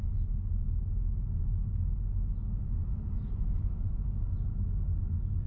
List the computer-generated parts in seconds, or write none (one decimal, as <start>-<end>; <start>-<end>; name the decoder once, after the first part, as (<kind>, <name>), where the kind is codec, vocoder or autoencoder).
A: none